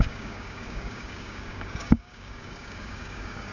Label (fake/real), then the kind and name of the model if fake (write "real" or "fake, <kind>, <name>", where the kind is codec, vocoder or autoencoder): fake, codec, DAC